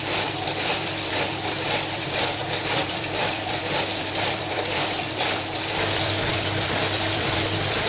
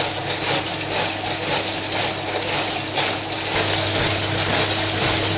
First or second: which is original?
second